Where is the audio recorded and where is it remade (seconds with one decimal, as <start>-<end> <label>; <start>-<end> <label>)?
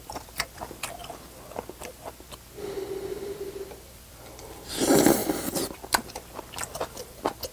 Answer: 0.0-1.0 remade; 1.0-3.1 recorded; 3.1-7.5 remade